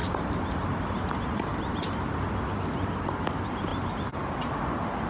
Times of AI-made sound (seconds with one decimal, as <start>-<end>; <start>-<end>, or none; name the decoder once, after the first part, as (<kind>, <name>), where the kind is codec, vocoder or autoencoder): 0.0-0.8 (vocoder, BigVGAN v2); 3.7-4.6